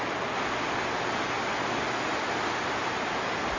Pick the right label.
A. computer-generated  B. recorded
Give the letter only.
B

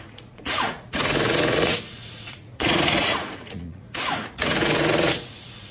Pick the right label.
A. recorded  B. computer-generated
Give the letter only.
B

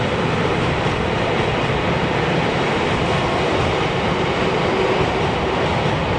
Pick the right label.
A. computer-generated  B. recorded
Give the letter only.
B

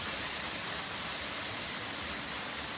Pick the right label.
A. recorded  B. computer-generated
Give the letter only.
A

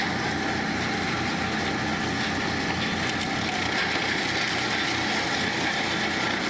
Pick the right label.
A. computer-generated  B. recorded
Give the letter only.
B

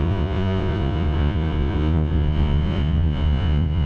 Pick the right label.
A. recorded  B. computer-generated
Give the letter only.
B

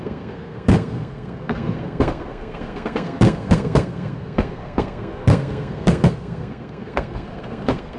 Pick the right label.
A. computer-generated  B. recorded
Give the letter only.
A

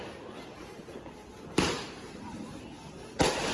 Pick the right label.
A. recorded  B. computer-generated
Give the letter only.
A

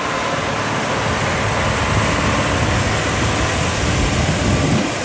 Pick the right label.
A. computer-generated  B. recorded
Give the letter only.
B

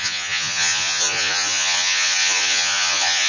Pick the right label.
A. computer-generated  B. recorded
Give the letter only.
A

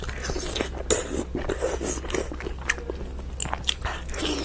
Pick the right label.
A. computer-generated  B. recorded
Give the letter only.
B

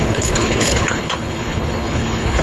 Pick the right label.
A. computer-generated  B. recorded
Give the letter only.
A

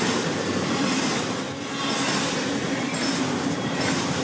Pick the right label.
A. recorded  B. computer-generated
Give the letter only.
A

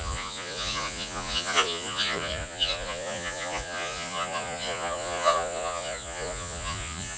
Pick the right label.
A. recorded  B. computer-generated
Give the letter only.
B